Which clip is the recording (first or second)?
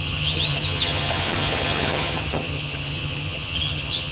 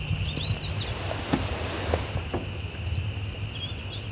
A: second